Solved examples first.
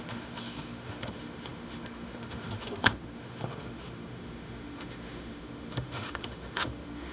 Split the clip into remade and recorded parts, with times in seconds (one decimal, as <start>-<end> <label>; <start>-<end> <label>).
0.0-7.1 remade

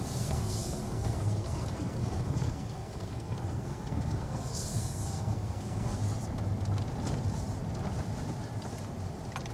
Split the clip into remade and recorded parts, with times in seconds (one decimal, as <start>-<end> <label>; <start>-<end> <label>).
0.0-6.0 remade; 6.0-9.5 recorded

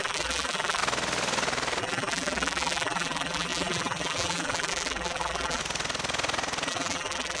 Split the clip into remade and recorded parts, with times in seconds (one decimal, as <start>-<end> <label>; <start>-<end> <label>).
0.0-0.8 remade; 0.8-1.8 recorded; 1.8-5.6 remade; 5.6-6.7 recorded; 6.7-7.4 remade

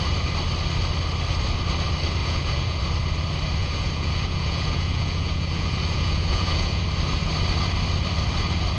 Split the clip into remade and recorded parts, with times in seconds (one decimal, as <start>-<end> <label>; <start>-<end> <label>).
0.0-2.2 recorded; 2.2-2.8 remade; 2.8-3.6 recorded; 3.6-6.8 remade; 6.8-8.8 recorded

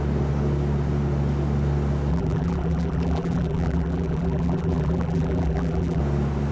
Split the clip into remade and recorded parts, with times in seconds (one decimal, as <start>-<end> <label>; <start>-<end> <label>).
0.0-2.1 recorded; 2.1-6.0 remade; 6.0-6.5 recorded

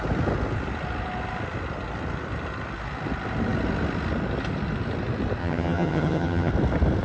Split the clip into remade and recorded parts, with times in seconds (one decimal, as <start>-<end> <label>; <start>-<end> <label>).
0.0-5.4 recorded; 5.4-6.5 remade; 6.5-7.0 recorded

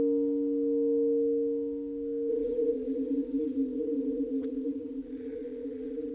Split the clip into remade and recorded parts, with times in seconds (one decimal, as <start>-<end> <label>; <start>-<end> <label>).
0.0-2.3 recorded; 2.3-6.1 remade